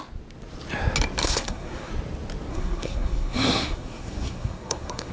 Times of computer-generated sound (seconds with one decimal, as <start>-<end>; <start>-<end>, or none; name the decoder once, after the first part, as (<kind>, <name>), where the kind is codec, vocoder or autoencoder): 1.2-1.9 (codec, SNAC); 2.5-5.1